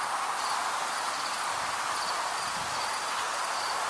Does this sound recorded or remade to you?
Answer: recorded